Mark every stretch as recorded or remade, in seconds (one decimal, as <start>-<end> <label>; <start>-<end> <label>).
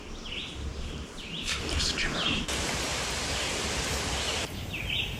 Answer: 0.0-0.7 recorded; 0.7-2.4 remade; 2.4-2.9 recorded; 2.9-3.9 remade; 3.9-5.2 recorded